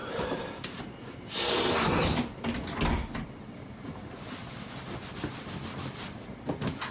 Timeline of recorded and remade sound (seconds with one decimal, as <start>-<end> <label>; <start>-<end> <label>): 0.0-0.8 remade; 0.8-6.9 recorded